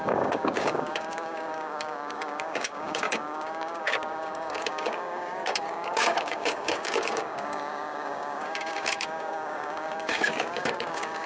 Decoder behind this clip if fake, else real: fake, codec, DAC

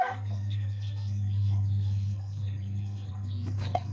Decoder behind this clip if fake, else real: fake, codec, SNAC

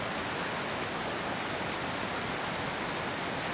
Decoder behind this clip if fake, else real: real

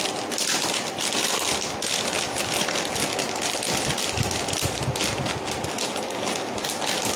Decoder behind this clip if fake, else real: real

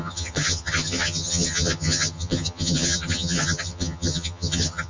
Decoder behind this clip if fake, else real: fake, vocoder, HiFi-GAN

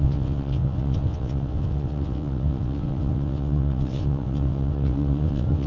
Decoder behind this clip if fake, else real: fake, vocoder, WaveNeXt